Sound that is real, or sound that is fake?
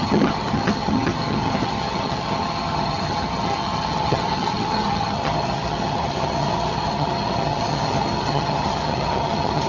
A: fake